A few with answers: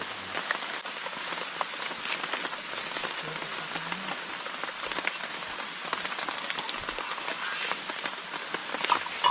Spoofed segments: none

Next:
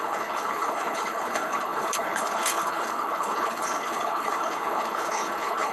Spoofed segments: 0.0-5.7 (codec, HILCodec)

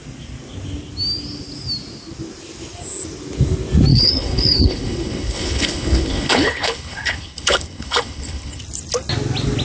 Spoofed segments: 3.9-8.6 (codec, HILCodec)